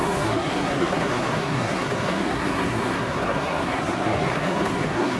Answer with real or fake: fake